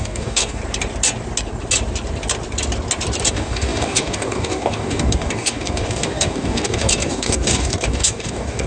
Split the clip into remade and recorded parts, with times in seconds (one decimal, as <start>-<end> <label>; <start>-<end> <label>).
0.0-0.6 remade; 0.6-3.3 recorded; 3.3-8.7 remade